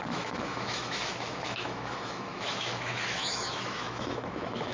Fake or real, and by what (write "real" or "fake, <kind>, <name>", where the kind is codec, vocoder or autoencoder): fake, autoencoder, DAC-VAE